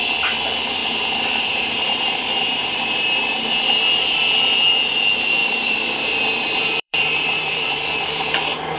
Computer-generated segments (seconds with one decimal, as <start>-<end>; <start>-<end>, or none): 0.8-3.3; 5.4-7.8